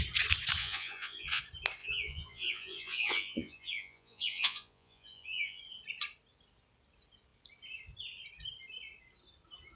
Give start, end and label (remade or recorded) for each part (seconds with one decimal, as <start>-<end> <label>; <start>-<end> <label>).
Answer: 0.0-0.6 recorded; 0.6-1.4 remade; 1.4-1.8 recorded; 1.8-5.6 remade; 5.6-9.8 recorded